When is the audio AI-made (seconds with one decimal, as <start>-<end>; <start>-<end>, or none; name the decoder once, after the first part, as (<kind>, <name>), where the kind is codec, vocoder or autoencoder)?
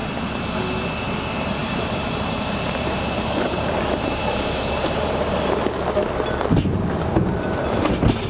1.6-5.3 (vocoder, BigVGAN v2)